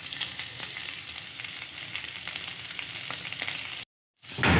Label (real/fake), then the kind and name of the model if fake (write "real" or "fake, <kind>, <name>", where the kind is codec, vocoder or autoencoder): real